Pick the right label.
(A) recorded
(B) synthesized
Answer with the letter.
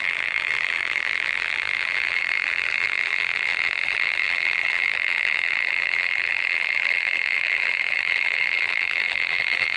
B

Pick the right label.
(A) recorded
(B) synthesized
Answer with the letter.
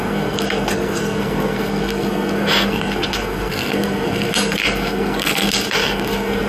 B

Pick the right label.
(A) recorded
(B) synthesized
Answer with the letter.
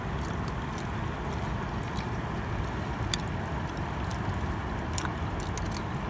A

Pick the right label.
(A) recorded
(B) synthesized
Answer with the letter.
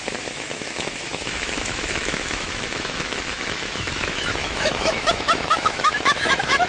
B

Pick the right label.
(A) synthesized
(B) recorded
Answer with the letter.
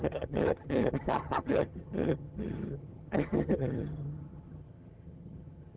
A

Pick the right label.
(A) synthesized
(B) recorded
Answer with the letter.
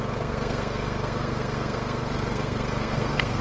A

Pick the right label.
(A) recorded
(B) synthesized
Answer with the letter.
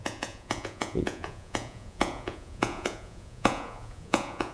B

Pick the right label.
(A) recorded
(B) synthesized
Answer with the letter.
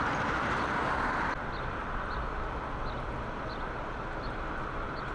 A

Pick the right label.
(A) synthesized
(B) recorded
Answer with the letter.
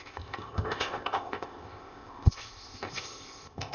A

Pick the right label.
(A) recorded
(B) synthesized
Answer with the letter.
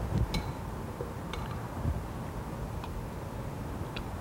A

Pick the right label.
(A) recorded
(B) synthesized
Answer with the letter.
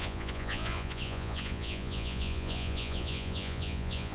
B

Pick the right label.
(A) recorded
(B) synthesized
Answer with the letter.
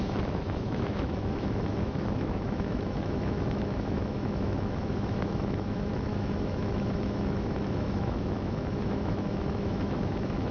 B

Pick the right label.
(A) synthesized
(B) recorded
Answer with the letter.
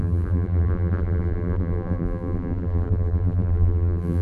A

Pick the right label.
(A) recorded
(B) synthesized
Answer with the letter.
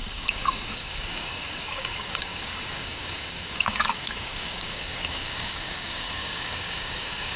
B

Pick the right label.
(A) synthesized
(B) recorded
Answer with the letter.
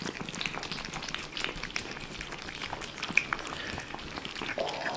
B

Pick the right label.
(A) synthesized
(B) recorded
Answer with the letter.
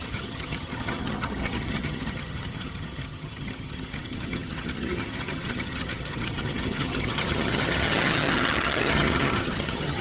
A